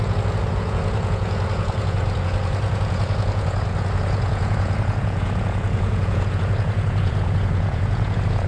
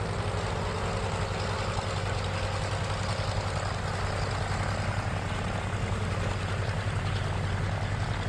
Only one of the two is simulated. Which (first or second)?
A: first